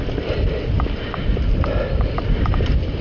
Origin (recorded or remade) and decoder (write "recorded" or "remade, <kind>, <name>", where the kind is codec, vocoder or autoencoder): recorded